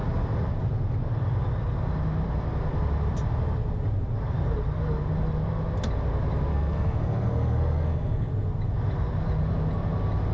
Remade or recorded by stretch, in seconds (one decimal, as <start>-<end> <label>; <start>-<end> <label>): 0.0-6.5 recorded; 6.5-8.3 remade; 8.3-10.3 recorded